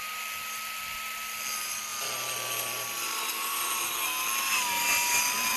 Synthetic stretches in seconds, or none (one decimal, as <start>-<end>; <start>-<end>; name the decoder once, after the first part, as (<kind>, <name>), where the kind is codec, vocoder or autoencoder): none